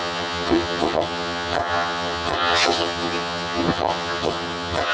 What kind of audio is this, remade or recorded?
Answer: remade